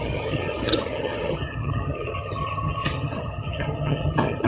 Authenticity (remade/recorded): remade